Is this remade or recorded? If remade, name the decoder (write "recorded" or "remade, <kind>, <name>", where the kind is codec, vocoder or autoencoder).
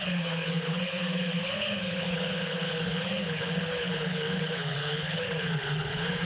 remade, codec, HILCodec